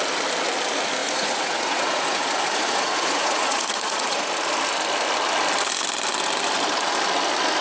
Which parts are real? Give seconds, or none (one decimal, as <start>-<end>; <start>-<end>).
0.0-1.0; 4.3-7.6